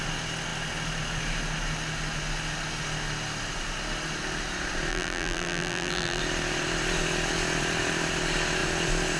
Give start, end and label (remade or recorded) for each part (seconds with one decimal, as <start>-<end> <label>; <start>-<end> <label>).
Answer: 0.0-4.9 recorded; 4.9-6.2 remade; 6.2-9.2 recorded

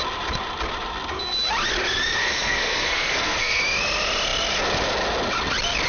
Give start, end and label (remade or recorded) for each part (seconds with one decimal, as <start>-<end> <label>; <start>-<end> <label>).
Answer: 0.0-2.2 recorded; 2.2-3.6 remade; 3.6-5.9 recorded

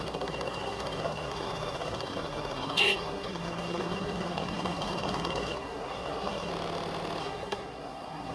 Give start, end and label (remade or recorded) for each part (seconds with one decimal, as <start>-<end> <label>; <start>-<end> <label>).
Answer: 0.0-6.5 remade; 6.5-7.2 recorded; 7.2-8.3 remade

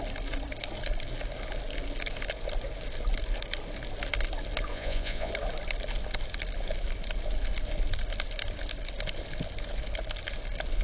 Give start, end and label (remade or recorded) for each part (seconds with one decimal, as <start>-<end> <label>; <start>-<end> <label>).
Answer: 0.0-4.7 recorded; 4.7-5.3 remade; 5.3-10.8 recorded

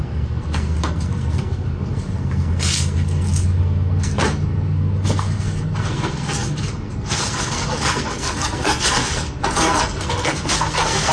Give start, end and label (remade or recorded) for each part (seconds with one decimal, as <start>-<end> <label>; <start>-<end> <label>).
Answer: 0.0-11.1 remade

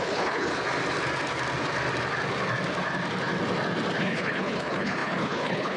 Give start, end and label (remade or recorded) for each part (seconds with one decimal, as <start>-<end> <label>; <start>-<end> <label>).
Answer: 0.0-0.5 remade; 0.5-4.0 recorded; 4.0-5.8 remade

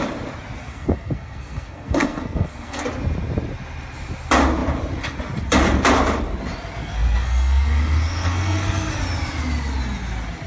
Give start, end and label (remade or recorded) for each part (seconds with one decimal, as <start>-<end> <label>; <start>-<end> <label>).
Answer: 0.0-0.6 recorded; 0.6-2.8 remade; 2.8-6.8 recorded; 6.8-9.0 remade; 9.0-10.5 recorded